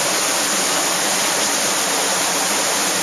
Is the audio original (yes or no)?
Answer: yes